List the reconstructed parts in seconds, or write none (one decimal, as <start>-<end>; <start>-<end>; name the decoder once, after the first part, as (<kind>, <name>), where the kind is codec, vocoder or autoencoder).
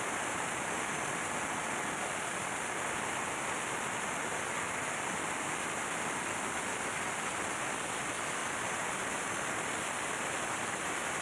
none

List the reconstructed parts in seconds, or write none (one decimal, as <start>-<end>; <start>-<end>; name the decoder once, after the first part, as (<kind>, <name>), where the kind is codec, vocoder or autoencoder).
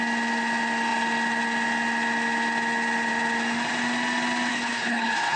4.5-5.4 (codec, HILCodec)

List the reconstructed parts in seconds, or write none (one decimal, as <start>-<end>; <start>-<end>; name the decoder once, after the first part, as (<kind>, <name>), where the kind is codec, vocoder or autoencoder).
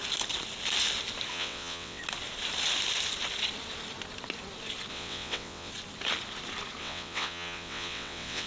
1.3-2.0 (vocoder, WaveNeXt); 4.9-5.7; 6.8-8.5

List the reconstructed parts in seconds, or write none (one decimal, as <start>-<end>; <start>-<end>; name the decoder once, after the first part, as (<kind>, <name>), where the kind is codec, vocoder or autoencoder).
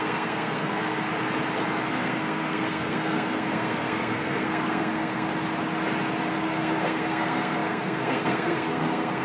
0.0-1.1 (codec, SNAC); 1.9-5.3; 6.3-9.2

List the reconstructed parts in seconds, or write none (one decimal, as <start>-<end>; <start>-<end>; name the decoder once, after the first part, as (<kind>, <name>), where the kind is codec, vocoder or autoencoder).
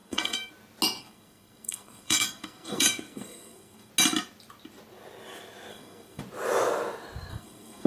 0.0-0.5 (codec, SNAC); 1.0-3.9; 5.7-6.2; 7.3-7.9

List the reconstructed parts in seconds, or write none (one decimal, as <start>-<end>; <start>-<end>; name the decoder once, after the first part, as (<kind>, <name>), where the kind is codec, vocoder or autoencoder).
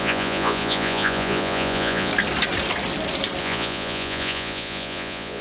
0.0-2.1 (vocoder, Vocos); 3.4-5.4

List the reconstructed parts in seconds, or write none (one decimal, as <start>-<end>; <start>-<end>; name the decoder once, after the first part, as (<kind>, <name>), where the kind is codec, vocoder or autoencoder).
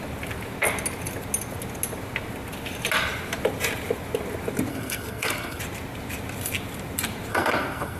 4.7-5.6 (codec, SNAC); 7.3-8.0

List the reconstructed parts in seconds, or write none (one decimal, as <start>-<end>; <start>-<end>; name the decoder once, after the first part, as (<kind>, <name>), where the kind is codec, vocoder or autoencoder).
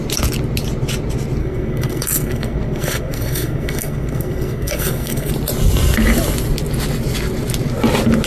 1.4-5.3 (codec, SNAC)